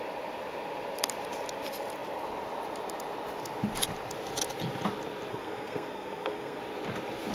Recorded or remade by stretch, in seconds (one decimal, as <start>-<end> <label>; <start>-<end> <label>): 0.0-5.3 recorded; 5.3-6.6 remade; 6.6-7.3 recorded